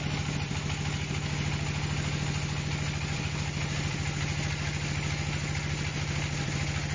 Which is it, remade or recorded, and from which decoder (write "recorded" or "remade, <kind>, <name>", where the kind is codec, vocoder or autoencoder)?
recorded